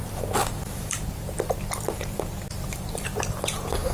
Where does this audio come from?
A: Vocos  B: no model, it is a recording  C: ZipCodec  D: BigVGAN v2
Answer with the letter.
D